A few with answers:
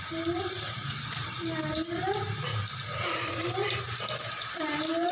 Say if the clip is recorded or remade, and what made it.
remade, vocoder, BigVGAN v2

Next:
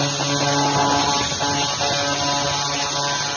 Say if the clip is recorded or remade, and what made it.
recorded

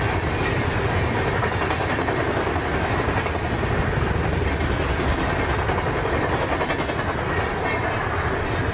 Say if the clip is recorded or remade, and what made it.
recorded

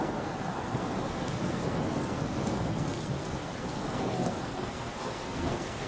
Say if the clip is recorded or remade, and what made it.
remade, codec, SNAC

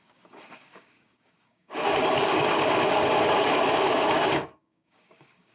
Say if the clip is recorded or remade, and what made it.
remade, codec, DAC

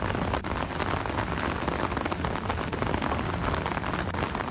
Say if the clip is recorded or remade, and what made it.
recorded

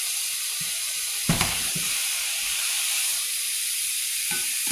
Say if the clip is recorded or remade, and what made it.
remade, vocoder, BigVGAN v2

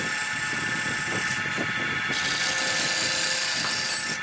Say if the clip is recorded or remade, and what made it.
recorded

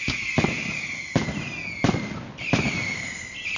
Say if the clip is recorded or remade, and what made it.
recorded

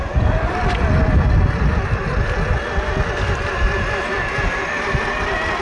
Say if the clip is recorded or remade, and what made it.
recorded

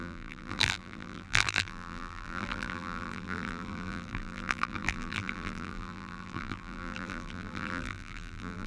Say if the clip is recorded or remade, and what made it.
remade, vocoder, BigVGAN v2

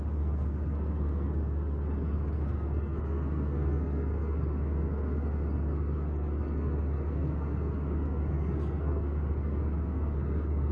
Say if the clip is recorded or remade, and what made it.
remade, codec, SNAC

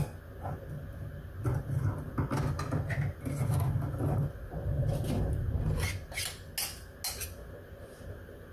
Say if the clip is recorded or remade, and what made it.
recorded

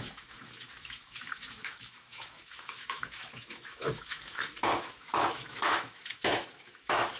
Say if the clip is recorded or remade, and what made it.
remade, autoencoder, DAC-VAE